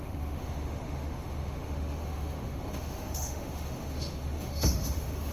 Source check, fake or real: fake